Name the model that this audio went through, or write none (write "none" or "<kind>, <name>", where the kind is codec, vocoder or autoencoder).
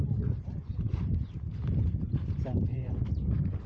vocoder, BigVGAN v2